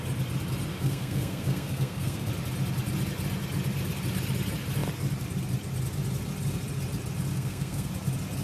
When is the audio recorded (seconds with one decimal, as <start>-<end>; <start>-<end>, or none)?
0.0-0.7; 2.3-7.3; 7.9-8.4